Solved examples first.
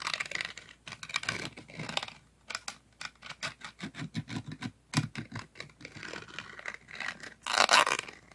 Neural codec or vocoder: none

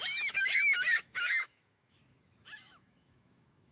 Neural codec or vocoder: autoencoder, DAC-VAE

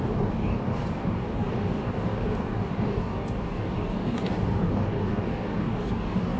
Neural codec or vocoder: codec, DAC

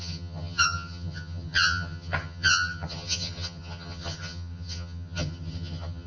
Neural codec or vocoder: vocoder, HiFi-GAN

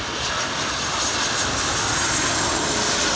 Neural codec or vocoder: none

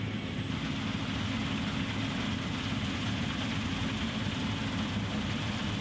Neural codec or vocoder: none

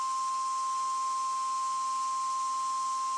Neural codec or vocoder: none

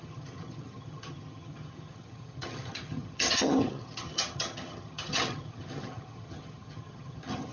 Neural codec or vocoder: vocoder, HiFi-GAN